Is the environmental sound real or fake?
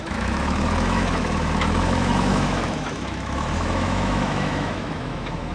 fake